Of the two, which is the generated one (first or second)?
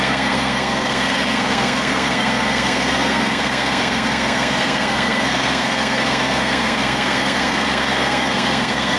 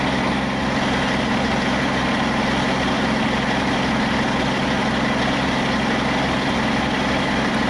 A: first